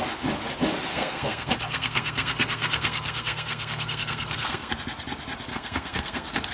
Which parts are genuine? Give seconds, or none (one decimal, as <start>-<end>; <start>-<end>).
0.0-0.9; 4.7-5.5